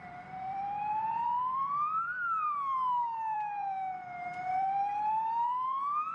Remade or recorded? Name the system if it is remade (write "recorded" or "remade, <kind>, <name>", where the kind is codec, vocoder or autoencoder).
remade, vocoder, BigVGAN v2